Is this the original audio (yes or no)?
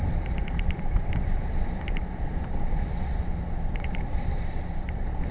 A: no